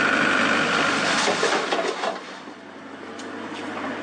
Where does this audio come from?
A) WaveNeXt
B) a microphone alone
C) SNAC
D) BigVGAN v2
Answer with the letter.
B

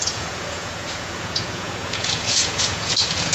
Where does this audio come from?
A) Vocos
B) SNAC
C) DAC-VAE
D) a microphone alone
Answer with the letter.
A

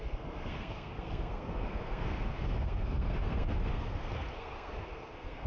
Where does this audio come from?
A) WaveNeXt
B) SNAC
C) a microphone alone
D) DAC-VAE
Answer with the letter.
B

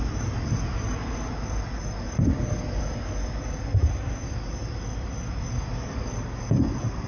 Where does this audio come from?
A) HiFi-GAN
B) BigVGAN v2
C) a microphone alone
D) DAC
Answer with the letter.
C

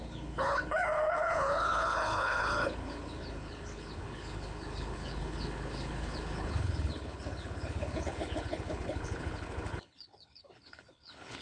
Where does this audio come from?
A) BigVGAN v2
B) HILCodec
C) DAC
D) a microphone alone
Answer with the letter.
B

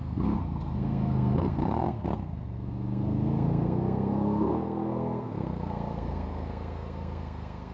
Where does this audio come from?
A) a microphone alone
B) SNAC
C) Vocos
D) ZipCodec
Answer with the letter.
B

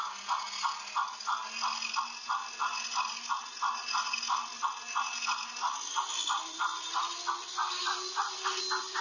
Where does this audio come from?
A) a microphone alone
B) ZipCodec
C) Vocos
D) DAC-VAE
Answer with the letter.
A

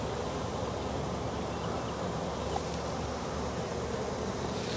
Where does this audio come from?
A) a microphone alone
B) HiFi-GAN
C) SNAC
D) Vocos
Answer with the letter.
A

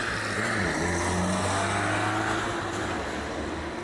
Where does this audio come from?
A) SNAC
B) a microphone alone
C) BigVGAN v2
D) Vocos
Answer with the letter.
B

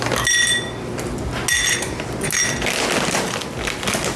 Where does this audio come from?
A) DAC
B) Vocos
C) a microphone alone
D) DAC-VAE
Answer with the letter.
C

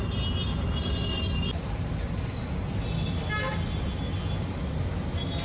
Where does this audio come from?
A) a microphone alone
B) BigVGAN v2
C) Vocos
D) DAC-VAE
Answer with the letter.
A